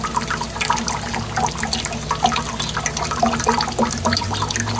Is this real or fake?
real